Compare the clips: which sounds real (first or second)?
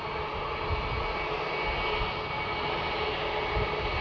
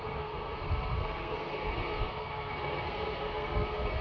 first